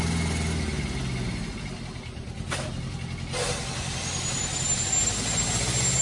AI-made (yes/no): no